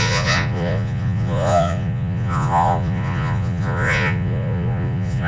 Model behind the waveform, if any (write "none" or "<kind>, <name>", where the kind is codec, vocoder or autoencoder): vocoder, Vocos